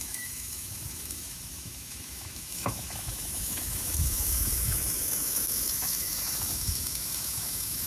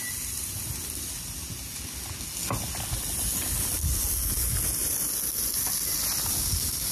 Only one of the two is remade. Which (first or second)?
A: first